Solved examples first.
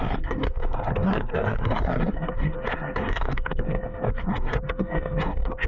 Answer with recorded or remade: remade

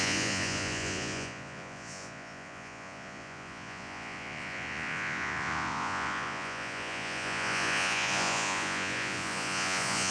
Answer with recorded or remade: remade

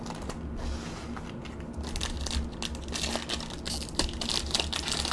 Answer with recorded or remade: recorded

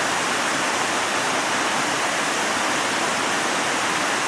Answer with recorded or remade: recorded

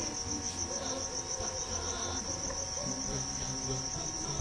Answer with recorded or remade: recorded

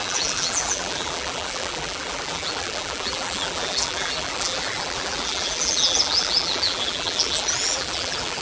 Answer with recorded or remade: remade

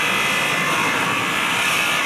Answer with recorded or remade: remade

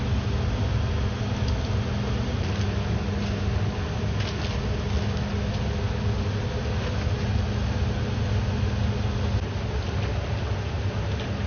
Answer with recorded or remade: recorded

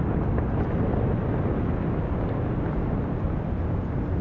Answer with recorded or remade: recorded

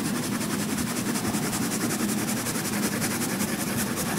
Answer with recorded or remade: recorded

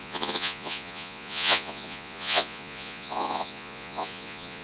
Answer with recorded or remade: remade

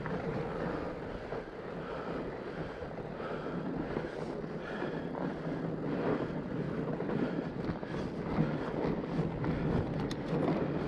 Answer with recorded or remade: recorded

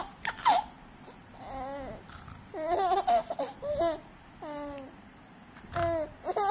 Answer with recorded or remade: recorded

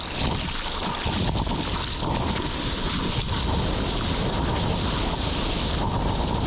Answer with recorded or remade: recorded